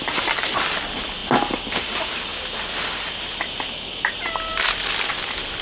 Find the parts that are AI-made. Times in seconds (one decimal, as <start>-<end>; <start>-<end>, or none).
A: none